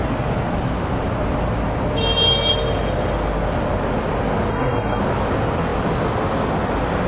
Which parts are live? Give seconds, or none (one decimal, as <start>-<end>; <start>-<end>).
0.0-4.5; 5.0-7.1

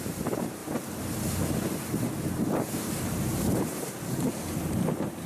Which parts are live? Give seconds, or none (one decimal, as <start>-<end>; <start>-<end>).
0.6-3.0

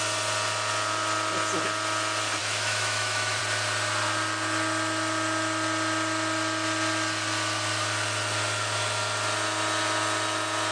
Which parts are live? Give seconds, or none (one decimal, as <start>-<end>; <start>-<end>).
0.0-2.4; 3.4-10.7

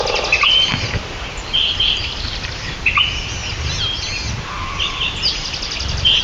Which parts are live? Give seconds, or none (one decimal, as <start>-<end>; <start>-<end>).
0.0-6.2

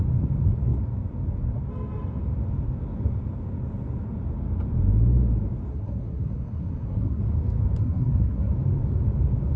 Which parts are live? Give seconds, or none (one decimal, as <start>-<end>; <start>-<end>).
0.0-5.7; 7.2-7.8; 8.5-9.6

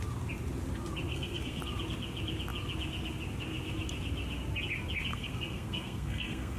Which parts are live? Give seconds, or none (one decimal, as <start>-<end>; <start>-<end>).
0.0-1.1; 1.6-5.1